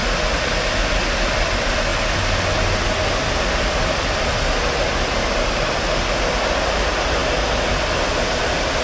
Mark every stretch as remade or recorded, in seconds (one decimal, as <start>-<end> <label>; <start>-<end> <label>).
0.0-8.8 recorded